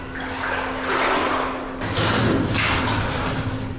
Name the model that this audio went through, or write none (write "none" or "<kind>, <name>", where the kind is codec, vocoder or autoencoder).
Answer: none